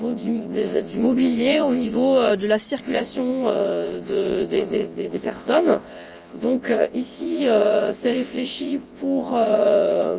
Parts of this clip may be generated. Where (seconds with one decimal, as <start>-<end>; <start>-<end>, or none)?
0.0-2.3; 2.8-10.2